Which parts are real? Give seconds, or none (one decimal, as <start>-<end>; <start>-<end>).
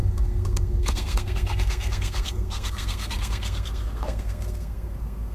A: none